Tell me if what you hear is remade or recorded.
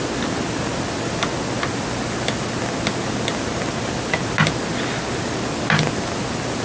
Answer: recorded